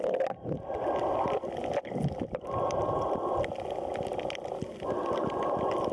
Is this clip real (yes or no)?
yes